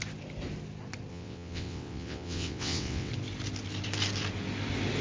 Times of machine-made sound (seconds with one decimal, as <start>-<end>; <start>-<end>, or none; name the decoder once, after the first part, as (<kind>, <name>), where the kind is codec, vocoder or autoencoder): 1.1-3.1 (vocoder, WaveNeXt)